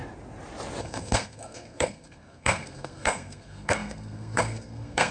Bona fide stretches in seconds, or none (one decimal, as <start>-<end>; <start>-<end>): 0.0-0.8

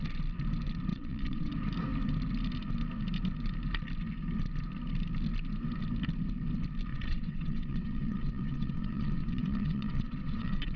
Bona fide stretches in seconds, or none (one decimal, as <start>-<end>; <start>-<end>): 0.0-0.9; 1.5-6.9